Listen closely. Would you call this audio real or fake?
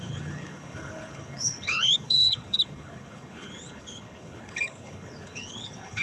fake